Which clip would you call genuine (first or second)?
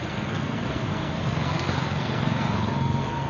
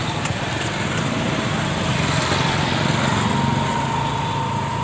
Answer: second